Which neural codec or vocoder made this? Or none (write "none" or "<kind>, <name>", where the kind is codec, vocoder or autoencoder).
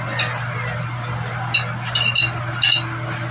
none